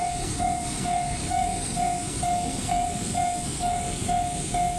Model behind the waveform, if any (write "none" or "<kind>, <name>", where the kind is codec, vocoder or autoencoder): codec, SNAC